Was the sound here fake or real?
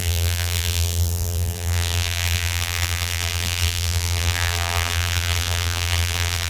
fake